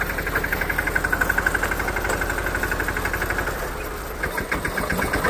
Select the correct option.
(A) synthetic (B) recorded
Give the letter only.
B